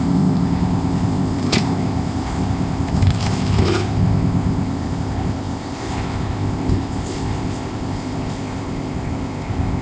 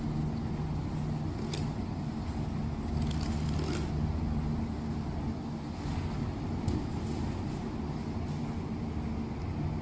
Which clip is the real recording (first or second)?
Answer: second